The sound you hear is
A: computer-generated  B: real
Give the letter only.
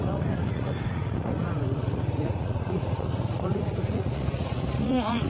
A